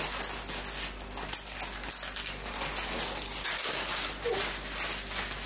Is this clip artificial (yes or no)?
no